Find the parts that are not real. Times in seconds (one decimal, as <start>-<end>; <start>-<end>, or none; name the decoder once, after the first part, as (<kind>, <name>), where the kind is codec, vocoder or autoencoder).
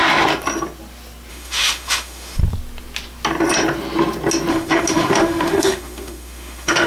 1.3-2.4 (autoencoder, DAC-VAE); 4.5-6.9